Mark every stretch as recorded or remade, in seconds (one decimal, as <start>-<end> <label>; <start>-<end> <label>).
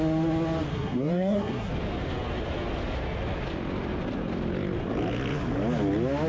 0.0-0.7 recorded; 0.7-1.7 remade; 1.7-6.3 recorded